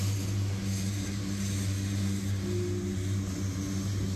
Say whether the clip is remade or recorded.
recorded